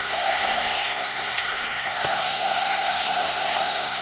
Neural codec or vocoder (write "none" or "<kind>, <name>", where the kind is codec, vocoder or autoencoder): codec, SNAC